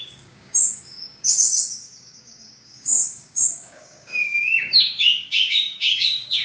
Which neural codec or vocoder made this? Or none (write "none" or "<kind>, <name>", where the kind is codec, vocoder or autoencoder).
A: codec, DAC